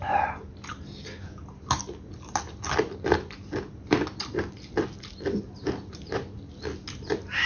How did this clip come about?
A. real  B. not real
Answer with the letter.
A